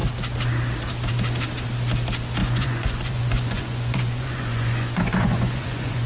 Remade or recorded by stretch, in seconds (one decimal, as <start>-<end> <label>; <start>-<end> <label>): 0.0-2.4 recorded; 2.4-6.1 remade